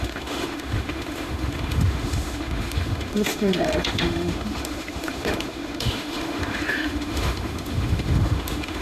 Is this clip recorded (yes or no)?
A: no